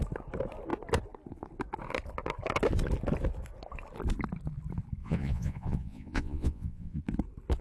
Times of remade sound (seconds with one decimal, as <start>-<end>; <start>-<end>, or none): 5.0-7.0